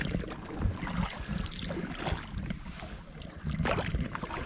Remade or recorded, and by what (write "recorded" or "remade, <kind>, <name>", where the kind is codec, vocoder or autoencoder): recorded